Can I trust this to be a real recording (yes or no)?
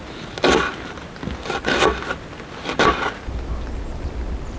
yes